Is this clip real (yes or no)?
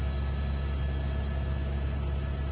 yes